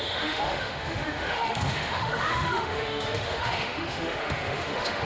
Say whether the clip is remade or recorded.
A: remade